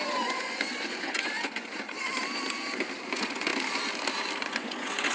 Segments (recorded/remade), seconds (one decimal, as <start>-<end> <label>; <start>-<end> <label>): 0.0-2.1 remade; 2.1-3.1 recorded; 3.1-3.5 remade; 3.5-4.4 recorded; 4.4-5.1 remade